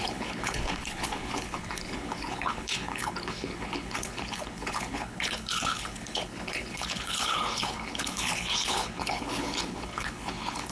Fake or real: fake